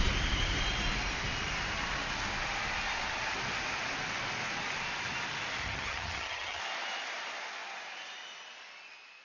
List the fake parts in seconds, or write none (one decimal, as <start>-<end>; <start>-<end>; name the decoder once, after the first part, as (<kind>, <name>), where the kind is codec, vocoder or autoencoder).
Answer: 5.6-6.6 (vocoder, HiFi-GAN)